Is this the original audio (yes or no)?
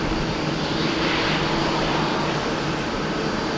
no